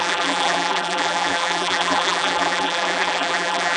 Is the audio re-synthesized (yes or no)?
yes